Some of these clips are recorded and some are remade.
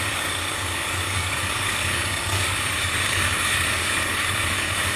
remade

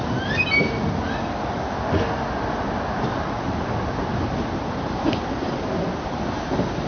recorded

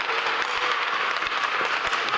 recorded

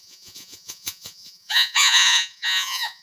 remade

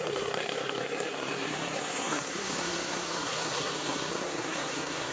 remade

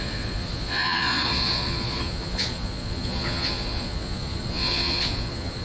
remade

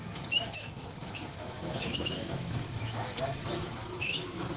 remade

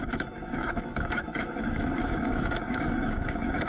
remade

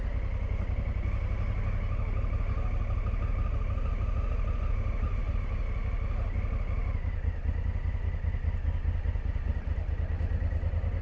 recorded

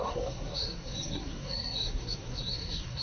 remade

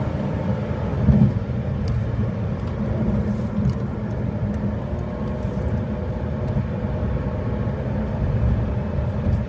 recorded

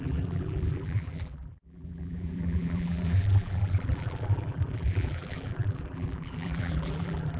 remade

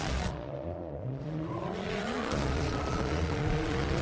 remade